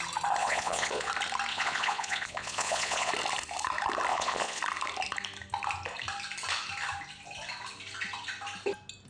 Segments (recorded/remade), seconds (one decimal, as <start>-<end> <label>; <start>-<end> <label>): 0.0-0.4 recorded; 0.4-1.1 remade; 1.1-1.5 recorded; 1.5-3.1 remade; 3.1-4.1 recorded; 4.1-4.6 remade; 4.6-9.1 recorded